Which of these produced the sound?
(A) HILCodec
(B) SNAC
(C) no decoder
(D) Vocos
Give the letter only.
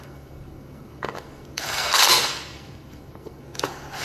B